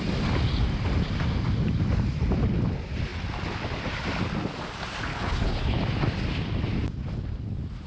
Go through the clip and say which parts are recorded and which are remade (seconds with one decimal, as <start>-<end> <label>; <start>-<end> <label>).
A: 0.0-5.1 recorded; 5.1-5.8 remade; 5.8-7.9 recorded